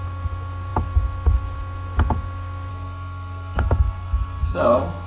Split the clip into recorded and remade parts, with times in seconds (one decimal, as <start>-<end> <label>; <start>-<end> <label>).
0.0-2.7 recorded; 2.7-5.1 remade